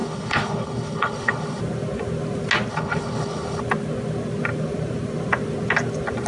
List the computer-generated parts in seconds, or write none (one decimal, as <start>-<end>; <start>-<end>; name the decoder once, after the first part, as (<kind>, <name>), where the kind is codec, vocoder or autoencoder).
0.0-1.6 (codec, HILCodec); 2.7-3.6

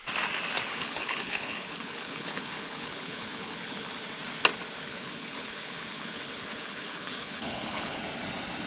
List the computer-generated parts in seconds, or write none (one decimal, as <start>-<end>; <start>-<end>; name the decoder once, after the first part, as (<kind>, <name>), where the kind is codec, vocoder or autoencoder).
0.7-3.9 (codec, HILCodec); 4.9-8.0

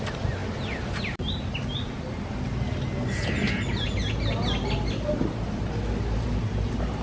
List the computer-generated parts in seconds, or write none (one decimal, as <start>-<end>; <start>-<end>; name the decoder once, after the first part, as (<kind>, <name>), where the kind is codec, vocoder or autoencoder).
none